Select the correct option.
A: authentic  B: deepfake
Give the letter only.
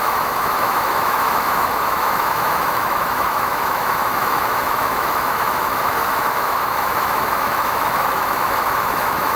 B